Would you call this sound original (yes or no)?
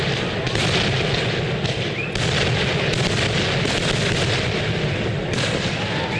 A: yes